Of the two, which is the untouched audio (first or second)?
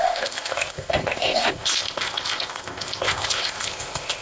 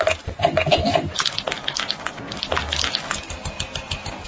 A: second